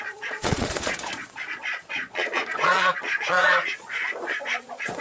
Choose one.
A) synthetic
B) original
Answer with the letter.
A